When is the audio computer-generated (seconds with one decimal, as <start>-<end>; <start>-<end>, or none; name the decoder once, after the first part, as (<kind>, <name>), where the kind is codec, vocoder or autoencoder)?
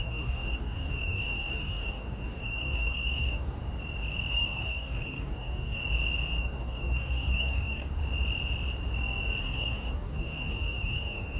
0.0-3.6 (codec, DAC); 4.3-5.8; 6.4-8.0; 9.4-11.4